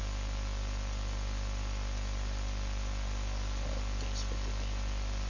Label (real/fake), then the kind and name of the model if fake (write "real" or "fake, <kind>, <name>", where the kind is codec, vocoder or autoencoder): real